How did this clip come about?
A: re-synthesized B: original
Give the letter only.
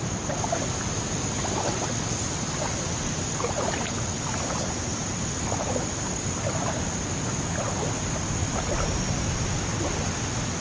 B